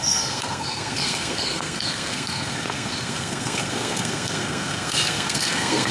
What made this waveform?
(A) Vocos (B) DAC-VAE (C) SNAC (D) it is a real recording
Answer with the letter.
C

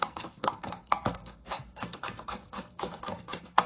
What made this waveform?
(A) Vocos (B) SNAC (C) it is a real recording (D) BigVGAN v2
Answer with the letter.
B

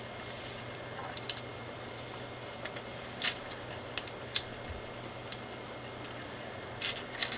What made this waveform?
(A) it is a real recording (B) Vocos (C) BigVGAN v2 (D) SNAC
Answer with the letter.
A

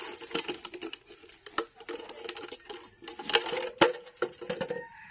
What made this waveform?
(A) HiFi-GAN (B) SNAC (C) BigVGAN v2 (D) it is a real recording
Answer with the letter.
D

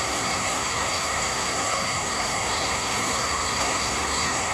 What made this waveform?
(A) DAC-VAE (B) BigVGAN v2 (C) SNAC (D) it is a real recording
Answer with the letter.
C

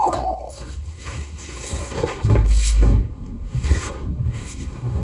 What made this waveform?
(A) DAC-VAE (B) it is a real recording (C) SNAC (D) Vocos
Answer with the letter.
C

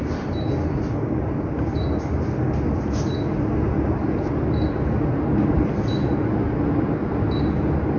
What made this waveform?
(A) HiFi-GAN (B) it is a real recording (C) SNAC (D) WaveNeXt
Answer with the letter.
B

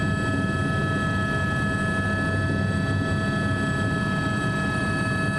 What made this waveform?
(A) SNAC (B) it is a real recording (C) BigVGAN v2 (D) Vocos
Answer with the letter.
B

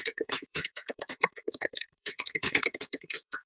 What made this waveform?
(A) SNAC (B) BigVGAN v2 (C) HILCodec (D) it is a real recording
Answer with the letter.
A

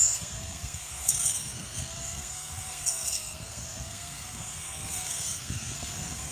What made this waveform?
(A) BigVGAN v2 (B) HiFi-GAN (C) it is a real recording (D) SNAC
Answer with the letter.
D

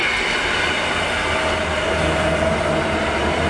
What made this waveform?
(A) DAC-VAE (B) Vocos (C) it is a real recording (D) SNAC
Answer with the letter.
C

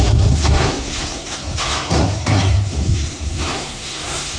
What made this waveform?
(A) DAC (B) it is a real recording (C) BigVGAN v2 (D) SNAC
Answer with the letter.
D